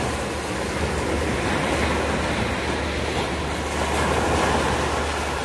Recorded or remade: recorded